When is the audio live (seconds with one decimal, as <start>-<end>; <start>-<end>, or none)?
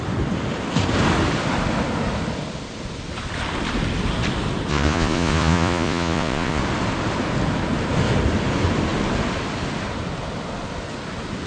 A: 0.0-4.7; 6.6-11.5